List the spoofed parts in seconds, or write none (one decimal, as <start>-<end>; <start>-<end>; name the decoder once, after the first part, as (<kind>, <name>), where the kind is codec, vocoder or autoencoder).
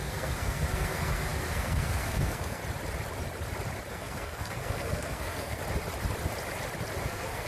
0.0-2.6 (codec, SNAC); 3.9-5.6; 7.0-7.5